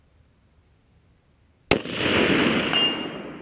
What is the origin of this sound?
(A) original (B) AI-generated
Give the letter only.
A